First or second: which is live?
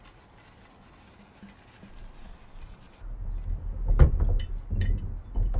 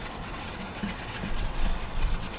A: first